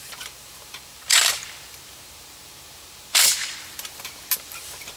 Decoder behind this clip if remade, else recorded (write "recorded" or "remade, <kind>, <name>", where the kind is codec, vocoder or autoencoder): remade, vocoder, BigVGAN v2